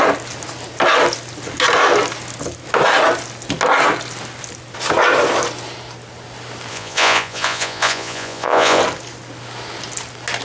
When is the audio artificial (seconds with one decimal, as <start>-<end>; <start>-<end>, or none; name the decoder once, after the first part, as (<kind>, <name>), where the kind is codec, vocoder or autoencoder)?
6.7-8.8 (vocoder, Vocos)